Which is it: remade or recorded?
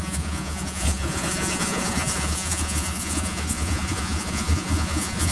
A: remade